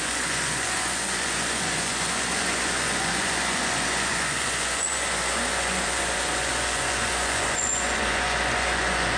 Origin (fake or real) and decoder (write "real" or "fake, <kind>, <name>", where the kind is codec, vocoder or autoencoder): fake, vocoder, Vocos